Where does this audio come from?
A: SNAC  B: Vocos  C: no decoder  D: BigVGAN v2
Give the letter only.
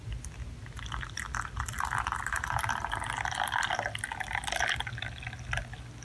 C